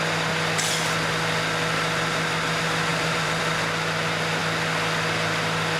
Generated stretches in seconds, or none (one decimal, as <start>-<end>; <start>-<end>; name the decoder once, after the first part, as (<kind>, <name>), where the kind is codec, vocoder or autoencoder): 2.9-3.4 (vocoder, BigVGAN v2)